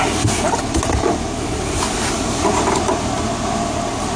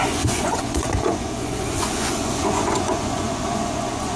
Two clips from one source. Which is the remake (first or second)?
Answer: second